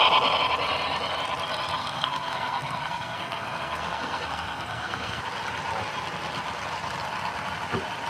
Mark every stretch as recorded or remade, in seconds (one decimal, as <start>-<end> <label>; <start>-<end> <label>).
0.0-1.8 recorded; 1.8-5.2 remade; 5.2-8.1 recorded